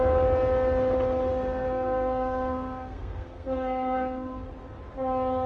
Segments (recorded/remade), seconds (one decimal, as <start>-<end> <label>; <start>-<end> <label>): 0.0-1.3 recorded; 1.3-4.5 remade; 4.5-5.5 recorded